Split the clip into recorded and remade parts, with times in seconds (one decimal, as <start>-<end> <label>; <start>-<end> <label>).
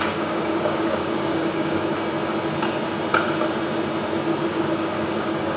0.0-1.9 remade; 1.9-4.4 recorded; 4.4-5.6 remade